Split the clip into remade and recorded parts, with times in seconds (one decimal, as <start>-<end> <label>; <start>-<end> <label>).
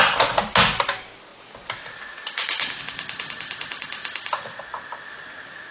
0.0-5.7 recorded